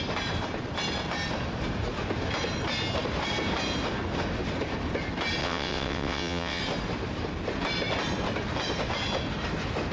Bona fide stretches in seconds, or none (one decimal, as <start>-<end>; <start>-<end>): 0.0-5.4; 6.6-9.9